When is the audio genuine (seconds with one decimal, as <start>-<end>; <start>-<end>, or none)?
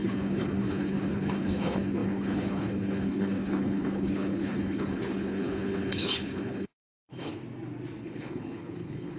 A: 7.4-8.0